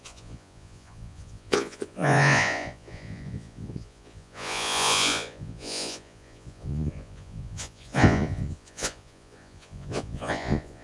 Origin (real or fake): fake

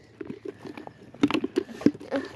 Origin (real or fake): real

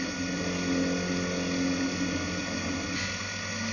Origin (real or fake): real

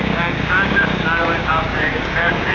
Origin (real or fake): fake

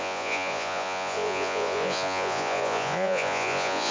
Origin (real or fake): fake